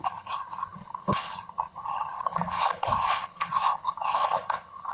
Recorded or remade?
remade